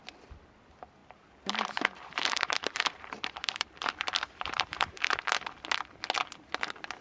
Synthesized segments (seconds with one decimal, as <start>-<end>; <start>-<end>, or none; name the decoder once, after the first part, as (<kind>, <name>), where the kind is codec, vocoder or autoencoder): 1.0-5.2 (vocoder, BigVGAN v2)

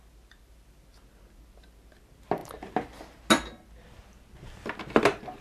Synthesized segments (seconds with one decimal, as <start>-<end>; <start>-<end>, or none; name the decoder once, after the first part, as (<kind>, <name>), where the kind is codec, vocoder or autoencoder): none

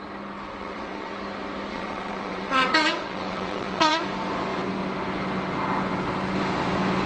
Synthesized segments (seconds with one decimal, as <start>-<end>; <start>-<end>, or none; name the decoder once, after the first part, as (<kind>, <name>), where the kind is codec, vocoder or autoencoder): 0.6-1.2 (vocoder, WaveNeXt); 1.7-4.0

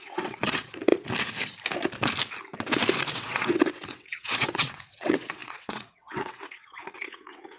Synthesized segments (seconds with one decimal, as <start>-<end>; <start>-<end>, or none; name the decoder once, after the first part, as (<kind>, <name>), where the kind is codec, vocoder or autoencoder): 0.0-0.9 (vocoder, WaveNeXt); 3.1-7.6